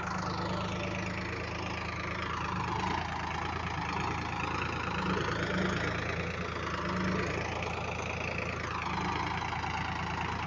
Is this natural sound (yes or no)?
yes